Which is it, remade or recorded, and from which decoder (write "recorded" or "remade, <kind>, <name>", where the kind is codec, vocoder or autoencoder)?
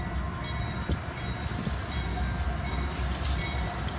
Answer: recorded